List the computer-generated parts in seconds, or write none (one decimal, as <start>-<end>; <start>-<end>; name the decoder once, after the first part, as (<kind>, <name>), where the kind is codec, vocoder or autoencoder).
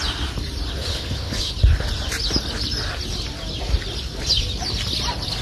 0.9-1.5 (codec, HILCodec)